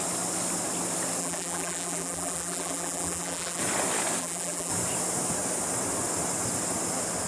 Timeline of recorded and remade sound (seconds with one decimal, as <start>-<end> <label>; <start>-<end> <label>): 0.0-1.2 recorded; 1.2-3.6 remade; 3.6-4.2 recorded; 4.2-4.7 remade; 4.7-7.3 recorded